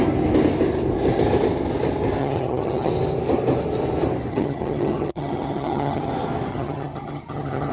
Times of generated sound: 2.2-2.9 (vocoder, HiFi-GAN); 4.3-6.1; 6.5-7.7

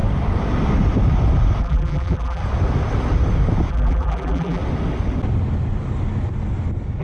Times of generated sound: 1.6-2.4 (vocoder, BigVGAN v2); 3.7-4.6

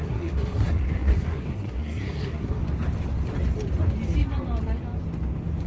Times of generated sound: 0.0-2.6 (codec, SNAC)

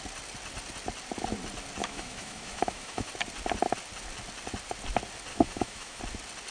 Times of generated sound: 1.8-3.1 (autoencoder, DAC-VAE); 5.3-6.0